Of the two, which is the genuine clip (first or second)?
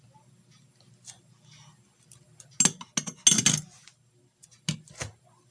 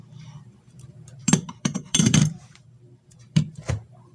first